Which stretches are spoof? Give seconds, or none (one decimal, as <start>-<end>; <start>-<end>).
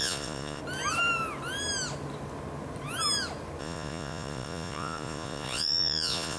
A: 0.0-0.6; 3.6-6.4